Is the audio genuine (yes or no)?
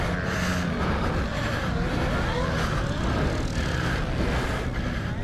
yes